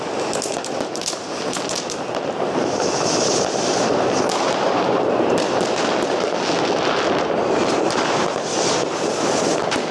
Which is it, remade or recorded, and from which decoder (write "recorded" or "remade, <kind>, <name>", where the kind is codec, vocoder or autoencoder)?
recorded